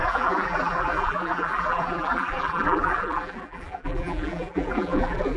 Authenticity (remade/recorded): remade